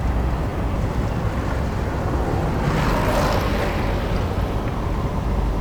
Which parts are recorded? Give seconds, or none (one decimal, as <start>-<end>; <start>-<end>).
0.0-5.6